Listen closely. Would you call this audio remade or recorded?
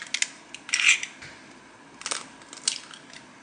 recorded